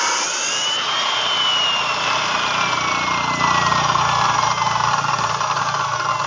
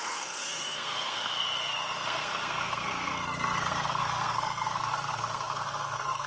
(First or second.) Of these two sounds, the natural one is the first